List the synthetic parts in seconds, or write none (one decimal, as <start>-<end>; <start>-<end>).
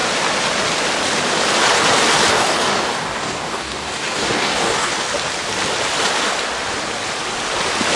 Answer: 2.3-4.9